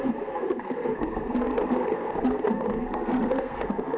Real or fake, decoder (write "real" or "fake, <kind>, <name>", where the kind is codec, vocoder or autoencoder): fake, codec, SNAC